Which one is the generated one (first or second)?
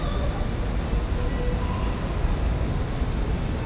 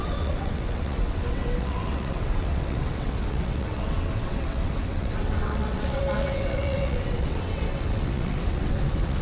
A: second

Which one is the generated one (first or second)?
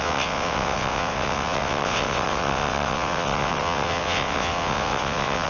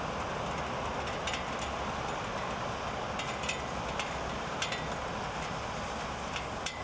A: first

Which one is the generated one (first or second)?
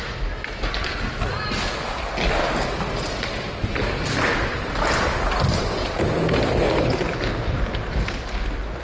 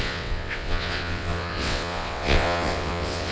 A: second